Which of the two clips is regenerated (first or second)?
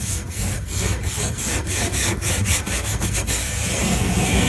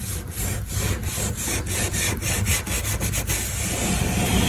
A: first